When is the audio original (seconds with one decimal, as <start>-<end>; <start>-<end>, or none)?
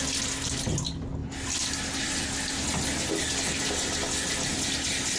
0.0-5.2